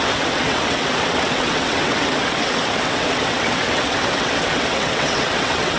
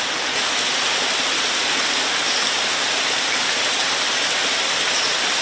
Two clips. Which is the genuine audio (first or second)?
second